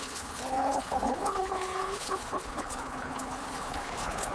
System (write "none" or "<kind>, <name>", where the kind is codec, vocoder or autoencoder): codec, HILCodec